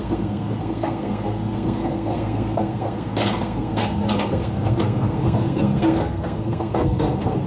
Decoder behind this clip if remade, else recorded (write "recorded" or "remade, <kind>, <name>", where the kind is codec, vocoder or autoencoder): remade, codec, SNAC